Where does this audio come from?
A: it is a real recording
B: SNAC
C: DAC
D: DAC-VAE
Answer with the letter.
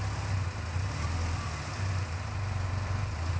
A